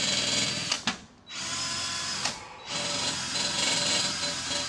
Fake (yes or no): no